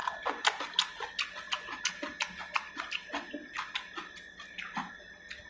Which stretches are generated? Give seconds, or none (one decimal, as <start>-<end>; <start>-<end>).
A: none